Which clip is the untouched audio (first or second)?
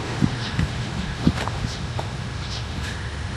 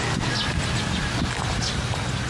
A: second